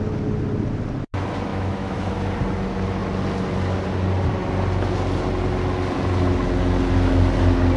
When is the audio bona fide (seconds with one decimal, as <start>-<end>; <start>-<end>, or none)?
0.0-1.5; 2.1-7.8